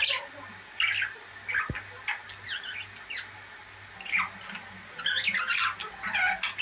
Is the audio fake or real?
real